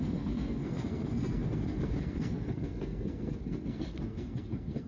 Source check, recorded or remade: remade